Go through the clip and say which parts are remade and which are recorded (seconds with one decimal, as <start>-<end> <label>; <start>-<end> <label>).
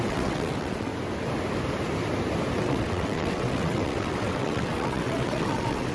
0.0-0.9 remade; 0.9-2.6 recorded; 2.6-5.9 remade